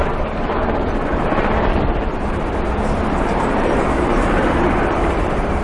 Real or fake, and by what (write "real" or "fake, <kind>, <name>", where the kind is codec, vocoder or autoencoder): fake, vocoder, BigVGAN v2